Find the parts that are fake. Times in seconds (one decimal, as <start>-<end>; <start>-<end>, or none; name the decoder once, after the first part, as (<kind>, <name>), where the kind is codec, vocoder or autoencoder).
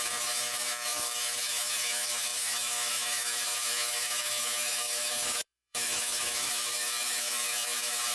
0.0-8.1 (autoencoder, DAC-VAE)